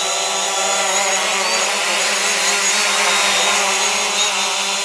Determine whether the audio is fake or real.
real